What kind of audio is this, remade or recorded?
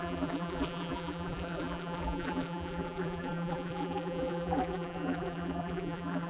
remade